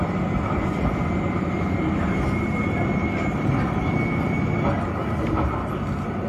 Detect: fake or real fake